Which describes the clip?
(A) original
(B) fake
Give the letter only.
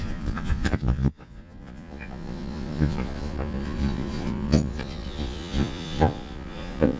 B